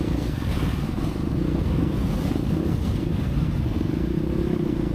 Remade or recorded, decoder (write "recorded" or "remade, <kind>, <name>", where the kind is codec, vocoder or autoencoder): remade, codec, SNAC